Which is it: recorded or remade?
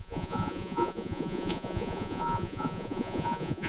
remade